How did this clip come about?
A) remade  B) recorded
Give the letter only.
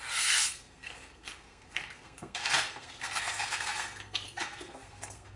A